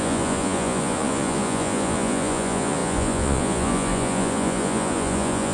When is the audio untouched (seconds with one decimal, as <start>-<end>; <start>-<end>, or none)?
none